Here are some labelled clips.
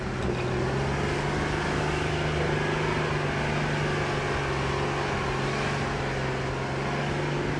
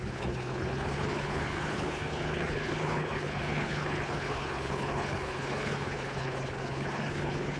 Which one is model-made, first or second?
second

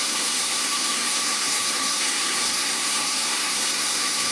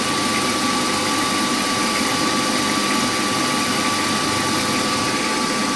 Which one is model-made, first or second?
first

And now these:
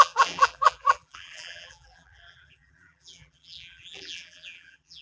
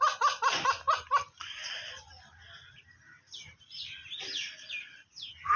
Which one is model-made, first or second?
first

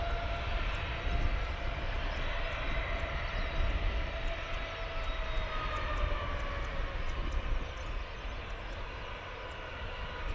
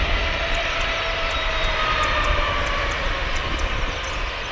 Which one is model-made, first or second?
second